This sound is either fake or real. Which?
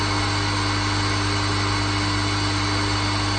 real